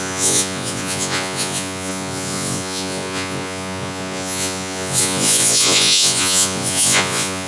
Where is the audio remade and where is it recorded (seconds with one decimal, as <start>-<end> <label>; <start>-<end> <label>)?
0.0-7.5 remade

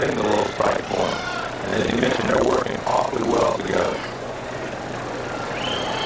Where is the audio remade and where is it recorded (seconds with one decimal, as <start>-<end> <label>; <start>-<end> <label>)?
0.0-1.7 recorded; 1.7-4.7 remade; 4.7-6.1 recorded